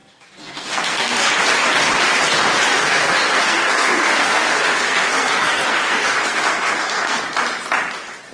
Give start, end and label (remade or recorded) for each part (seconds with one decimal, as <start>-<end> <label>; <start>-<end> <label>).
0.0-1.3 remade; 1.3-2.7 recorded; 2.7-7.2 remade; 7.2-8.3 recorded